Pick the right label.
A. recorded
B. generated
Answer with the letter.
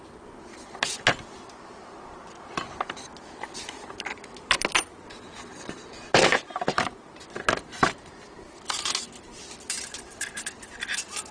B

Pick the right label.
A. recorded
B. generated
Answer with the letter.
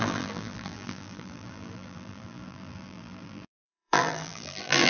B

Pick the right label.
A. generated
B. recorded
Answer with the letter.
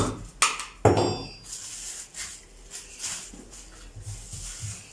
B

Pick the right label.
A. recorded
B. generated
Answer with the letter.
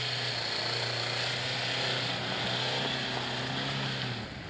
A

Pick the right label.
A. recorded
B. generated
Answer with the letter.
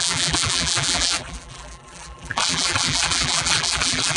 B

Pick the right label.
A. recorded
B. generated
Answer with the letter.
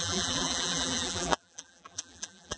B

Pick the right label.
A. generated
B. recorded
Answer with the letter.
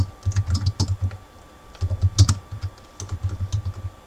B